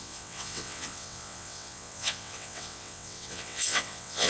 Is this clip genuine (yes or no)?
no